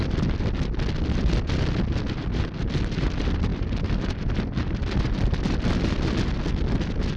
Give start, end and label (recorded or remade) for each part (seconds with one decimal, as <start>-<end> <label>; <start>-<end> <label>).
0.0-3.5 recorded; 3.5-6.0 remade; 6.0-7.2 recorded